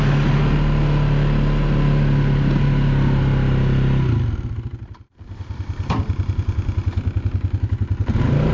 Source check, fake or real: real